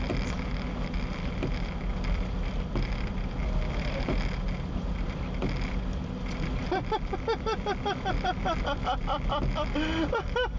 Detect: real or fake real